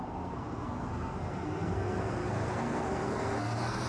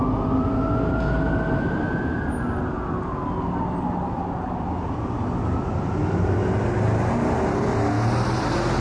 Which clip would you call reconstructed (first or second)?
first